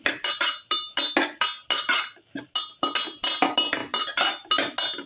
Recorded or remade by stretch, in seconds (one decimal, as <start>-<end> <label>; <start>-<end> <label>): 0.0-5.1 recorded